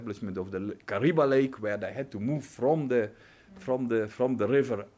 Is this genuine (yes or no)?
yes